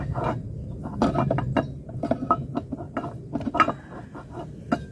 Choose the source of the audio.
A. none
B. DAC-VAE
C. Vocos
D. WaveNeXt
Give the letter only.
A